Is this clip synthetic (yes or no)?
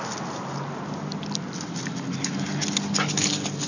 no